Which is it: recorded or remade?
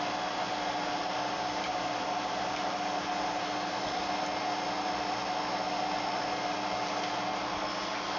recorded